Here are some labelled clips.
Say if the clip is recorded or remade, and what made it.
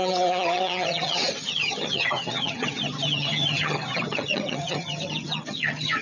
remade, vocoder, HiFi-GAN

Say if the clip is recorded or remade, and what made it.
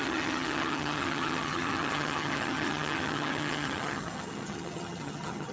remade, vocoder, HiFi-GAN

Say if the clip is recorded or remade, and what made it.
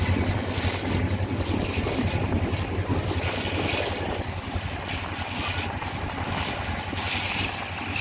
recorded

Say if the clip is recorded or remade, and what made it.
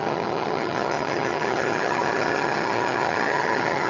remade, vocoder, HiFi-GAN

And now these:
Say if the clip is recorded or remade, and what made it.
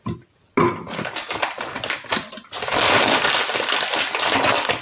recorded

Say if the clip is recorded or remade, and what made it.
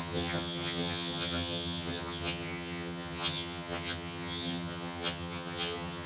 remade, vocoder, HiFi-GAN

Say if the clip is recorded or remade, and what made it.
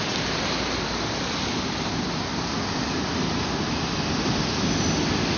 recorded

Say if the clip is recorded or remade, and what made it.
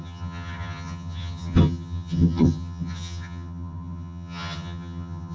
remade, vocoder, HiFi-GAN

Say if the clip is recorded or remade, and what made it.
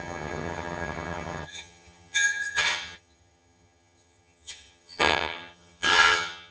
remade, vocoder, HiFi-GAN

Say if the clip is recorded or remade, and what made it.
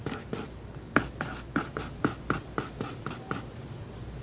recorded